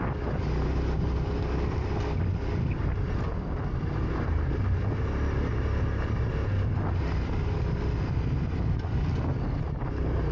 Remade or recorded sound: recorded